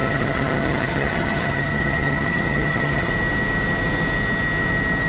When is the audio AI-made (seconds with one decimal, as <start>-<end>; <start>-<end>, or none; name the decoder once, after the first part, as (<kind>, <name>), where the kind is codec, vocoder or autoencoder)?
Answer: 0.0-3.1 (vocoder, HiFi-GAN)